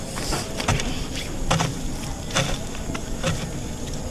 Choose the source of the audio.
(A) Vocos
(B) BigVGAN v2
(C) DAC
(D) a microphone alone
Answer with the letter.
B